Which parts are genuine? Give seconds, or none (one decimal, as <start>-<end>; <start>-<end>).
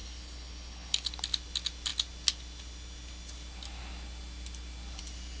1.1-5.4